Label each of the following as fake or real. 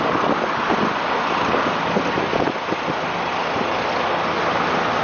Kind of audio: real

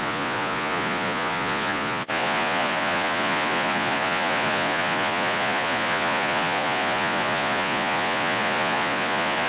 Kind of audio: fake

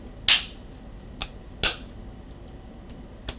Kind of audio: real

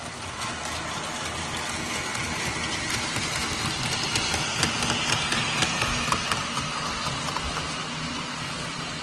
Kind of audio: real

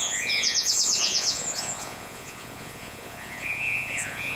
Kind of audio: fake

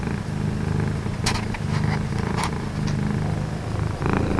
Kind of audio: real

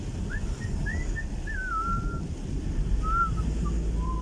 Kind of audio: real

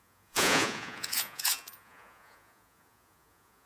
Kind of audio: fake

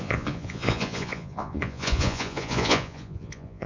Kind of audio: fake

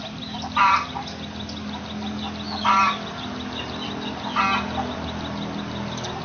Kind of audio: real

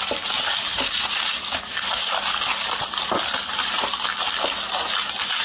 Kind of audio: real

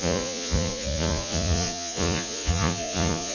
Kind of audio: fake